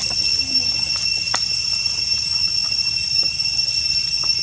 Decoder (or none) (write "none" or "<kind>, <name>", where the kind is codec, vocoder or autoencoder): none